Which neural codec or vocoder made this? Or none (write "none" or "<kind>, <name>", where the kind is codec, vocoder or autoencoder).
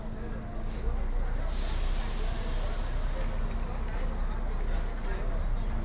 none